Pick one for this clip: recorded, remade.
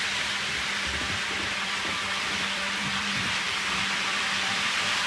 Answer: remade